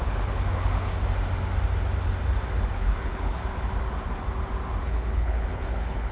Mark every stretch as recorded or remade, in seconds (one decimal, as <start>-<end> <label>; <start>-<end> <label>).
0.0-0.9 remade; 0.9-2.6 recorded; 2.6-3.4 remade; 3.4-4.8 recorded; 4.8-6.1 remade